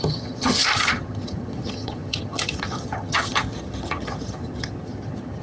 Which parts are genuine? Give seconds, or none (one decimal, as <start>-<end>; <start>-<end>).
none